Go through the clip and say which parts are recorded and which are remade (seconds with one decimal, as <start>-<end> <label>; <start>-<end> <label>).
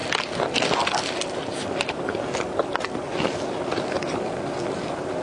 0.0-1.0 recorded; 1.0-1.5 remade; 1.5-4.6 recorded; 4.6-5.2 remade